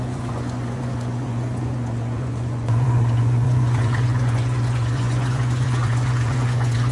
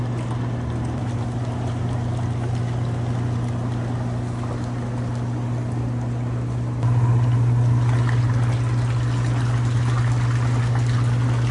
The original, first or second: second